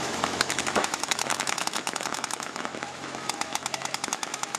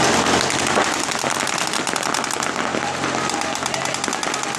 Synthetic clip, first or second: first